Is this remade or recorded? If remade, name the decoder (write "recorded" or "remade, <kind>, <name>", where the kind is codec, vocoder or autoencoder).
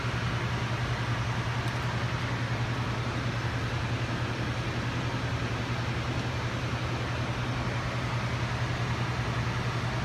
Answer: recorded